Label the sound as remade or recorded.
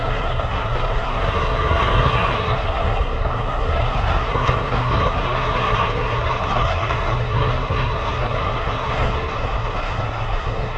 remade